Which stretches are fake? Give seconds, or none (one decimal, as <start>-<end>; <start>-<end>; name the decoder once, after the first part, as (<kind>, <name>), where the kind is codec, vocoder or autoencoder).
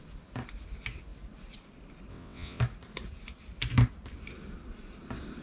2.1-2.6 (vocoder, WaveNeXt)